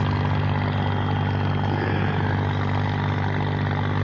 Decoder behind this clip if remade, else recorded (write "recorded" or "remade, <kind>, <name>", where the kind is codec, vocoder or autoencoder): recorded